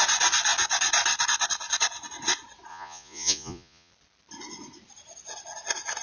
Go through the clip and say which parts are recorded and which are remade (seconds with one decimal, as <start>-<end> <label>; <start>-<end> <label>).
0.0-2.7 recorded; 2.7-3.9 remade; 3.9-6.0 recorded